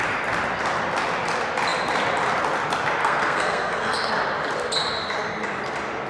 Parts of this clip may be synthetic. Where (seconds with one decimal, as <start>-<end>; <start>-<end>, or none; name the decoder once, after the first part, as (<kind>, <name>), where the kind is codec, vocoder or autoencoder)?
3.0-4.1 (codec, SNAC)